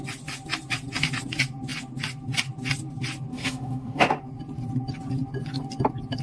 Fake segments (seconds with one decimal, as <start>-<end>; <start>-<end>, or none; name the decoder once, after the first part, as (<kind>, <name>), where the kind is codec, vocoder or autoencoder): 3.3-4.2 (autoencoder, DAC-VAE)